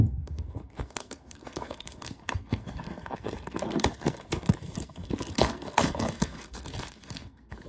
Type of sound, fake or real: fake